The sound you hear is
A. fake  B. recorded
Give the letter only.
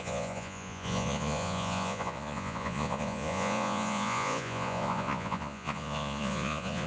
A